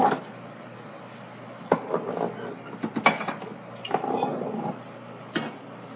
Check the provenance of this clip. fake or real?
real